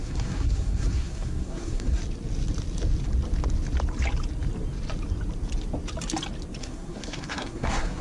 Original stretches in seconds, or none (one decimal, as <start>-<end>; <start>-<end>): 2.0-6.6